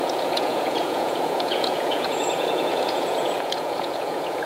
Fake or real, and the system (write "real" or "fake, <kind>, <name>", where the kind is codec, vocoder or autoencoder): fake, vocoder, Vocos